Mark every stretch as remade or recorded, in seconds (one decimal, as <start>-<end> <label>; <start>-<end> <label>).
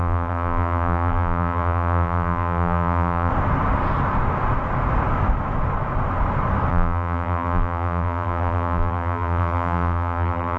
0.0-3.3 remade; 3.3-6.7 recorded; 6.7-10.6 remade